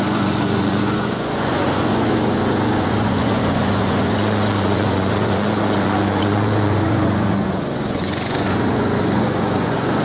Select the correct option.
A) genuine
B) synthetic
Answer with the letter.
B